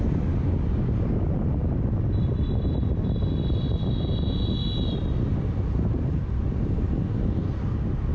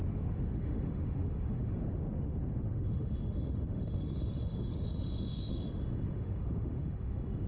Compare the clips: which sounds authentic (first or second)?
first